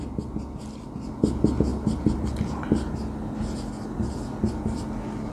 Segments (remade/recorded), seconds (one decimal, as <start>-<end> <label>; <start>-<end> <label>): 0.0-5.3 recorded